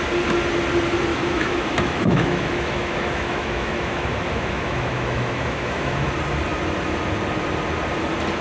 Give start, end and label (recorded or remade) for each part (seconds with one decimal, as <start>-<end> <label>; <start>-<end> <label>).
0.0-1.1 recorded; 1.1-6.1 remade; 6.1-8.4 recorded